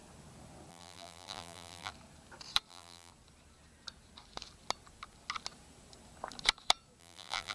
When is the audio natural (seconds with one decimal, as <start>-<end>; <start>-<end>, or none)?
0.0-0.7; 1.9-2.7; 3.1-7.0

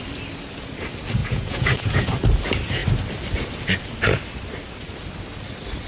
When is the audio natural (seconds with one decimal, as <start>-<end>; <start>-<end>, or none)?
0.0-1.2; 2.1-5.9

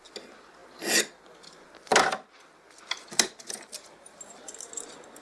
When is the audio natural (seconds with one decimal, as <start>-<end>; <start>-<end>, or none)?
0.0-5.2

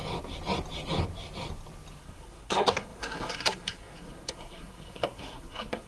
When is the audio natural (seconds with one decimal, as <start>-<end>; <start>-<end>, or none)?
0.0-2.0